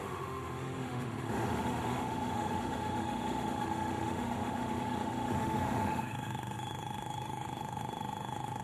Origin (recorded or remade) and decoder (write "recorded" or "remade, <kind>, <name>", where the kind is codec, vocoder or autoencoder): remade, autoencoder, DAC-VAE